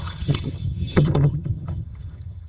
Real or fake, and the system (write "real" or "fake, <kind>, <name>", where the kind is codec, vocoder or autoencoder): fake, vocoder, HiFi-GAN